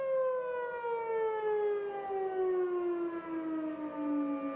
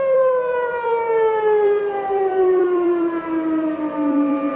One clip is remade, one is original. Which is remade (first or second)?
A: second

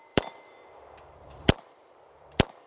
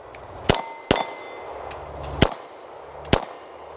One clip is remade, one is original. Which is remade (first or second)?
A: first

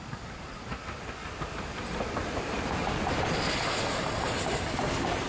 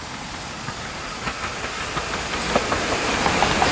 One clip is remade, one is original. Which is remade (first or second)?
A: first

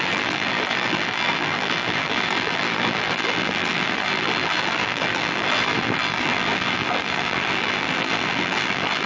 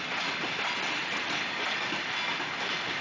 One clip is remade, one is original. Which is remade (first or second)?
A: first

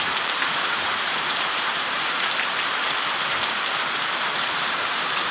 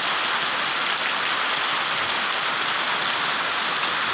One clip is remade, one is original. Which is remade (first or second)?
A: first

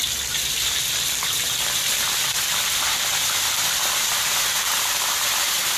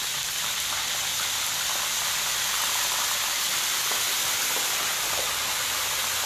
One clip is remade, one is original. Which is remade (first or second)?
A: first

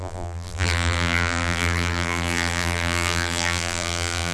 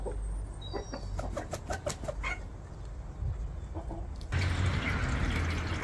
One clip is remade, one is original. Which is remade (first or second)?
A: first